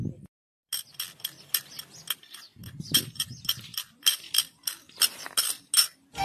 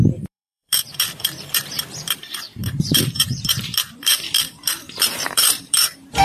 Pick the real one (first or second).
first